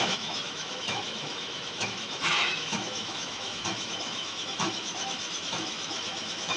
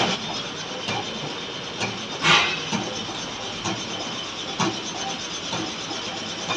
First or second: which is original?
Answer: second